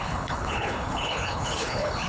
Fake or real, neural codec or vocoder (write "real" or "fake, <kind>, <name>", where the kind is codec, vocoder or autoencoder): fake, codec, HILCodec